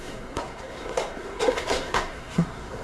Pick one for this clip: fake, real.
fake